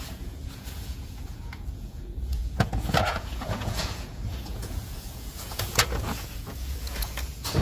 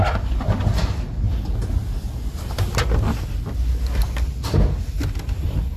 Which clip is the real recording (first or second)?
second